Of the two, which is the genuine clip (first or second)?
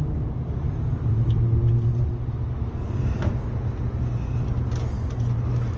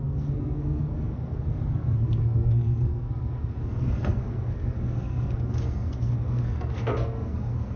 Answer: first